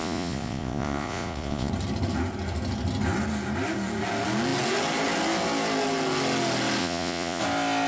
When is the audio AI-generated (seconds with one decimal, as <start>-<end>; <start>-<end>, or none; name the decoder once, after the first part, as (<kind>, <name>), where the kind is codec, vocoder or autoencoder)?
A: 0.0-1.7 (vocoder, Vocos); 6.8-7.4